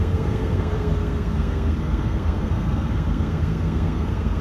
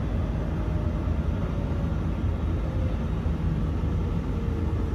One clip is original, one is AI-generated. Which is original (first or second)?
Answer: second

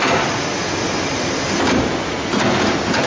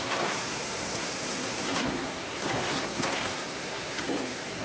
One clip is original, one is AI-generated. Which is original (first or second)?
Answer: first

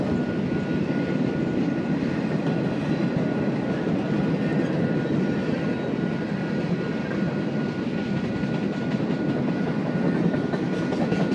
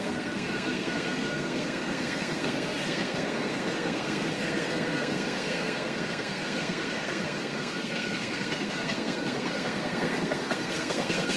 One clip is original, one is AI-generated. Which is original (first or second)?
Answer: first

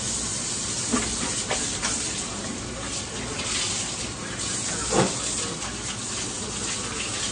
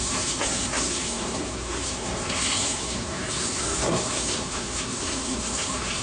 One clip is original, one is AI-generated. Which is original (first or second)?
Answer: first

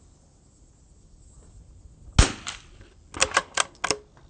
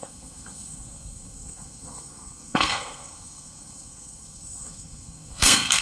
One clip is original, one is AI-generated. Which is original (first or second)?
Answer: first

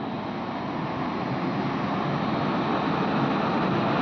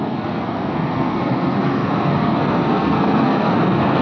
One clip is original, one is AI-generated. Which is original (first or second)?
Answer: first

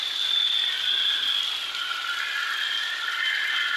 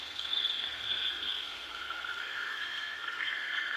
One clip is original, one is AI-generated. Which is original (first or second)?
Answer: first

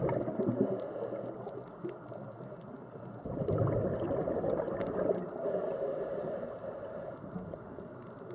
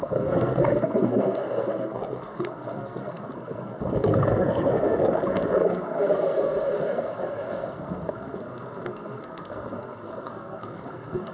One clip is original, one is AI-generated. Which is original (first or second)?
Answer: first